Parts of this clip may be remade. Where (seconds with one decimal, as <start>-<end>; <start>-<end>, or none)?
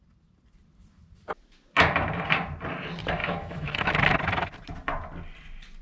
3.2-3.9